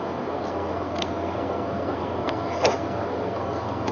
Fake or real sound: fake